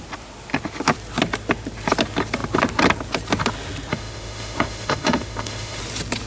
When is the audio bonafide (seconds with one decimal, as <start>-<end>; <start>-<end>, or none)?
0.0-3.9; 5.8-6.3